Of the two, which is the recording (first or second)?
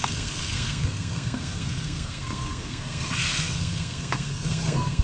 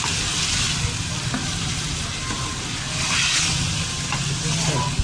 second